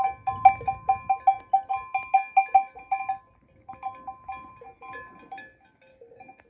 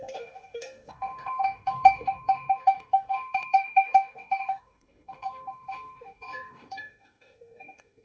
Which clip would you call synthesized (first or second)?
second